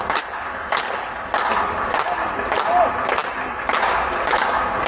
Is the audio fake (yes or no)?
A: no